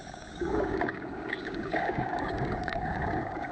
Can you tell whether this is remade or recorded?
remade